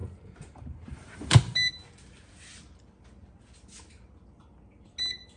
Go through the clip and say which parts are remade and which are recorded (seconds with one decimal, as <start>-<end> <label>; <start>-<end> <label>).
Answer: 0.0-1.7 remade; 1.7-5.4 recorded